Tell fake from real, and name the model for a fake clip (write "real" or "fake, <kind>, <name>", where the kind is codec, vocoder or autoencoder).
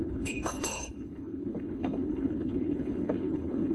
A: fake, codec, HILCodec